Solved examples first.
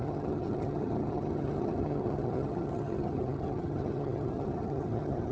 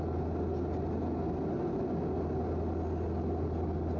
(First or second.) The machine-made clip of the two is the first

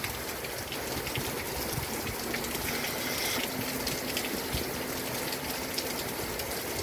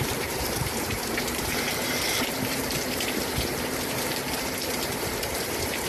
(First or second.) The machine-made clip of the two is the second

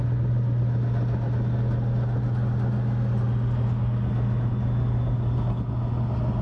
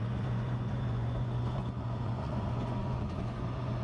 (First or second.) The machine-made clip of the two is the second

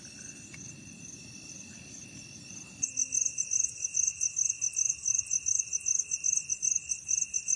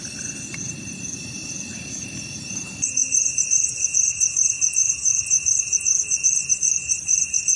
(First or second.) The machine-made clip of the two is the second